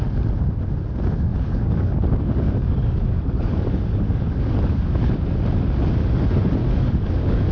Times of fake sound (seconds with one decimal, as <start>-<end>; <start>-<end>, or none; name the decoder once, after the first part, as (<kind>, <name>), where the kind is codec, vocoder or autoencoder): 1.3-5.1 (codec, DAC); 6.6-7.5